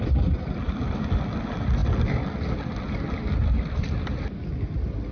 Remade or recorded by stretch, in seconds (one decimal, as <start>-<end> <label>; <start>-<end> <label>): 0.0-5.1 recorded